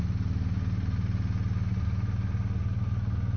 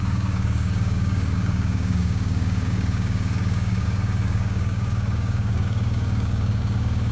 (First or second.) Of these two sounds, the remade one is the second